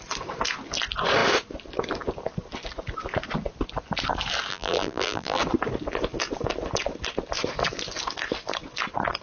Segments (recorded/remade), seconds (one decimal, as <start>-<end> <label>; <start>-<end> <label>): 0.0-4.5 recorded; 4.5-5.4 remade; 5.4-9.2 recorded